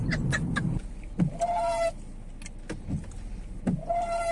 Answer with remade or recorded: recorded